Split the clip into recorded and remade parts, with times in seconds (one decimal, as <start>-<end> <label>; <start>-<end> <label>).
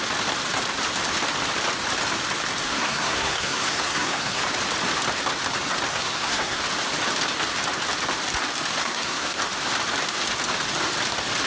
0.0-2.6 recorded; 2.6-4.4 remade; 4.4-5.9 recorded; 5.9-6.6 remade; 6.6-8.8 recorded; 8.8-9.4 remade; 9.4-11.5 recorded